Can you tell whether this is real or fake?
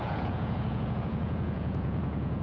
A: fake